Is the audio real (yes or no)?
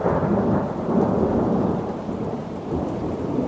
yes